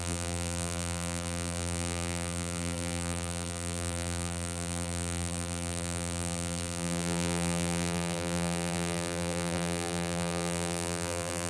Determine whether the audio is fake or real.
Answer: fake